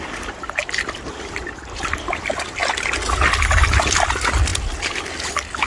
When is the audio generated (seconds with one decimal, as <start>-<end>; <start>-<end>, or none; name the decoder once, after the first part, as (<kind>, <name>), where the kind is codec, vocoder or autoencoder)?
none